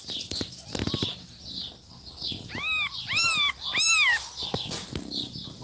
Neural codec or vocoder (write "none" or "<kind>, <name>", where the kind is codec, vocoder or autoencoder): none